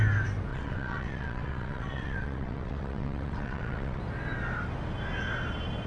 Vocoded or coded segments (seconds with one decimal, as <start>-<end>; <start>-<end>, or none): 0.5-4.0